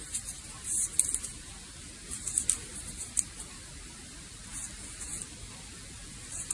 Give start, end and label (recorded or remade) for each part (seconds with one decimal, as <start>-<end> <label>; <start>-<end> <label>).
0.0-6.5 recorded